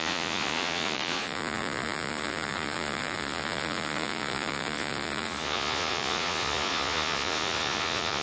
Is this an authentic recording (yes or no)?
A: no